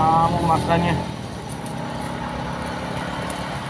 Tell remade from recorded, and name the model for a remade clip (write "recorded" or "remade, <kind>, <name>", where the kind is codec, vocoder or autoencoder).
recorded